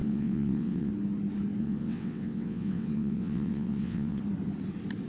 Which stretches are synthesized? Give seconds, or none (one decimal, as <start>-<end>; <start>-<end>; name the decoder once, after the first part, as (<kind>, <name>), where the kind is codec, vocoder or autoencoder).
0.0-0.9 (vocoder, WaveNeXt); 1.6-4.2